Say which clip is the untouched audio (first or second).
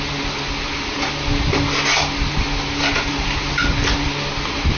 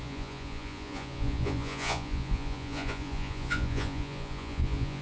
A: first